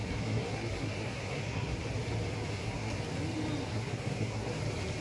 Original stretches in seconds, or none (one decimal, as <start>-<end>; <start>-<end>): 1.8-2.5; 3.0-3.7; 4.6-5.0

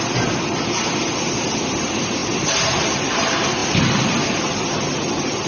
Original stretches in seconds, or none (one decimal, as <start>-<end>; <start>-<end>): 0.0-5.5

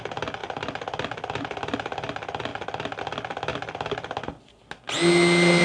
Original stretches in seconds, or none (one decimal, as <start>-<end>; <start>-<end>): 0.0-5.6

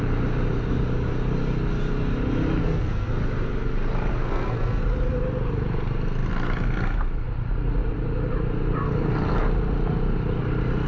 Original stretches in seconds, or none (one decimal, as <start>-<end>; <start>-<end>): 0.0-2.6; 3.1-4.1; 4.8-10.9